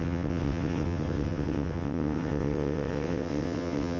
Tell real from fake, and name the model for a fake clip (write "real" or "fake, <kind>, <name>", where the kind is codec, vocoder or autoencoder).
fake, vocoder, WaveNeXt